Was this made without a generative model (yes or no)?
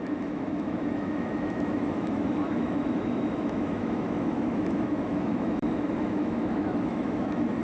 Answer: no